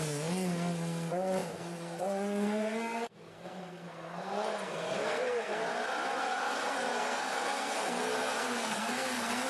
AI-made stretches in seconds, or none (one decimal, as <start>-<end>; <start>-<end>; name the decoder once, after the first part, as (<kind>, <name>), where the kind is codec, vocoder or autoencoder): 0.0-5.6 (codec, SNAC); 6.2-9.5